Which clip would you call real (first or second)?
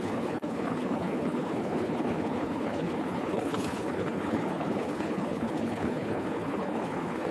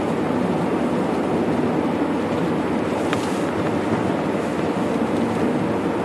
second